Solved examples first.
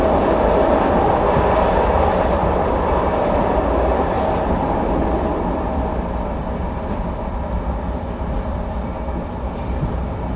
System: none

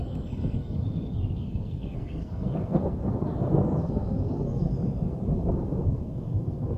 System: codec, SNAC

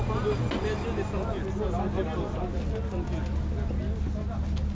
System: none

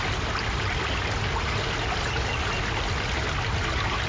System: none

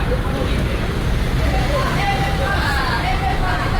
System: vocoder, BigVGAN v2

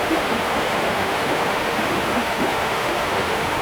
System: autoencoder, DAC-VAE